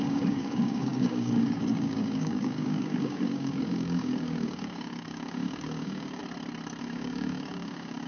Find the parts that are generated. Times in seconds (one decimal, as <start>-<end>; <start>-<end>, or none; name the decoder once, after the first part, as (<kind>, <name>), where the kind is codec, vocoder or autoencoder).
0.0-6.2 (codec, DAC); 6.8-8.1